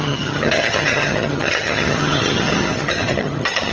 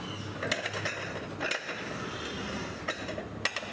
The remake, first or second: first